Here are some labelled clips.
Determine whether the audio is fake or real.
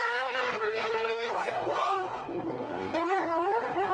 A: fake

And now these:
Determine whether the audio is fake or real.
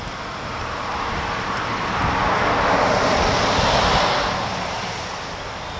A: real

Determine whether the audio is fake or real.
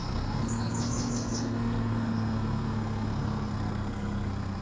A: fake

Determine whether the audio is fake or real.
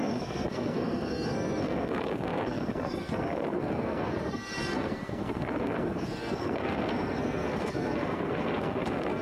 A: fake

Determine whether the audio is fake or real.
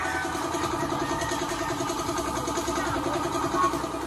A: real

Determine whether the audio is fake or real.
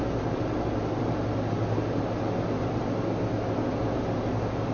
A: real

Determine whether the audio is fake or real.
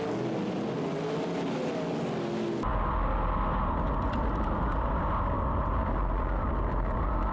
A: real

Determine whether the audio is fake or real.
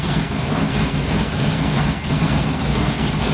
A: fake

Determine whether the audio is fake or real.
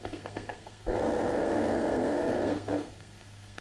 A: fake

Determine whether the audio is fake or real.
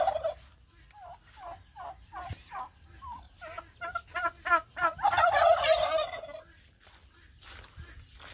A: real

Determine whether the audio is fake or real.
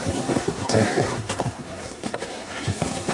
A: fake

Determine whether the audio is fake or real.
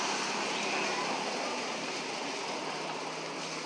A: real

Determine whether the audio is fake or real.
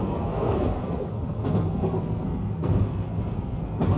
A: fake